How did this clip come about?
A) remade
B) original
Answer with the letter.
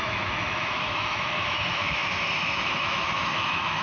A